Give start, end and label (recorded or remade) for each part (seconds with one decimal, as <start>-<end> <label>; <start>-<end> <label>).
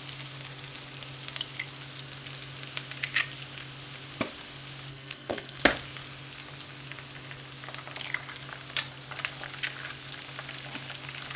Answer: 0.0-4.9 recorded; 4.9-5.6 remade; 5.6-11.4 recorded